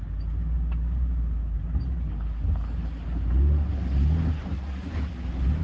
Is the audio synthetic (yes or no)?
no